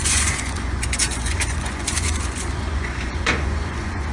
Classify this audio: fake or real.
fake